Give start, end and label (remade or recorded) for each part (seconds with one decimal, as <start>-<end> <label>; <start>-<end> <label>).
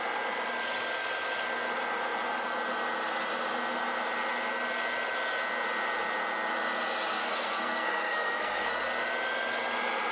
0.0-7.2 recorded; 7.2-8.7 remade; 8.7-10.1 recorded